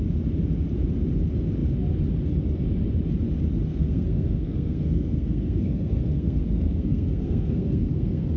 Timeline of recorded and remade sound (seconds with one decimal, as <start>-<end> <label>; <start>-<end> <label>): 0.0-3.7 recorded; 3.7-8.4 remade